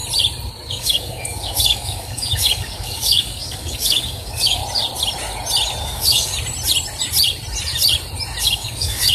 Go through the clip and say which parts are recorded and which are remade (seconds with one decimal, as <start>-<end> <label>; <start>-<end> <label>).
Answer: 0.0-0.7 recorded; 0.7-4.6 remade; 4.6-5.8 recorded; 5.8-6.3 remade; 6.3-8.4 recorded; 8.4-9.1 remade